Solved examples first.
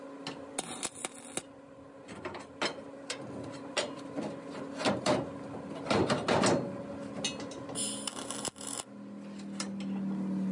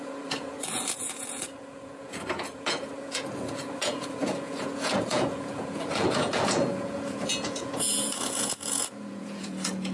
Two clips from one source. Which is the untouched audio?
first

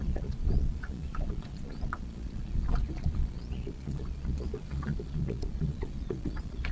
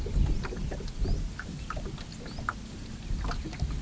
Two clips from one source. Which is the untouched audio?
second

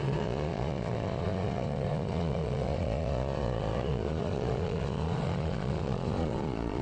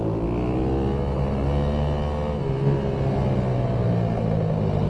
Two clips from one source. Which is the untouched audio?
second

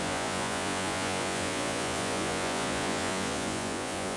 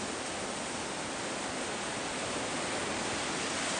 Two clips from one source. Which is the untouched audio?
second